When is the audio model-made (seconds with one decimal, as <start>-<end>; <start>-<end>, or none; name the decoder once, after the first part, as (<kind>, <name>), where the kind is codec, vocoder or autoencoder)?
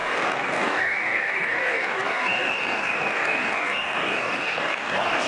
0.0-5.3 (codec, DAC)